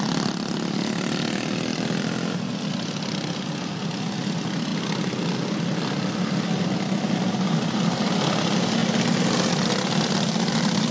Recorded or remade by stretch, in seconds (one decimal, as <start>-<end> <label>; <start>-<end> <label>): 0.0-10.9 recorded